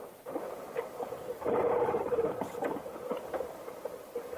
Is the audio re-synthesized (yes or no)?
yes